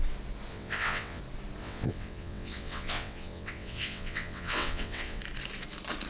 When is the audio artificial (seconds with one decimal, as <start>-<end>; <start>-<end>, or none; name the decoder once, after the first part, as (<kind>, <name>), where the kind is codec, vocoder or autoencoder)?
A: 0.5-1.2 (vocoder, WaveNeXt); 1.6-5.2